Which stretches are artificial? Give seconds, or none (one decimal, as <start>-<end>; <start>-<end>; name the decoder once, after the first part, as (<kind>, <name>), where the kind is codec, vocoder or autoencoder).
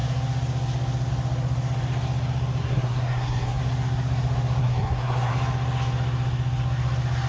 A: 2.6-3.6 (codec, SNAC); 4.6-5.3